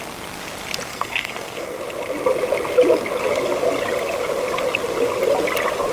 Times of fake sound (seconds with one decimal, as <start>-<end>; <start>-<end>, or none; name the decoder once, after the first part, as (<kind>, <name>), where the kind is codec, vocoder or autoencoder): 0.9-1.8 (codec, SNAC)